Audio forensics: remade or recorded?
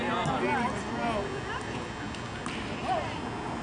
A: recorded